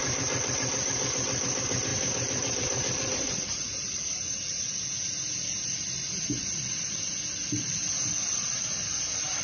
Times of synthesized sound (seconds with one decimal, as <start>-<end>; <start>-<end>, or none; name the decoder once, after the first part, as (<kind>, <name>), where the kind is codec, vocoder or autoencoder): 1.9-5.3 (vocoder, BigVGAN v2)